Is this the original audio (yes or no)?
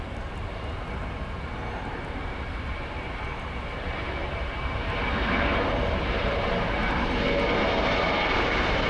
no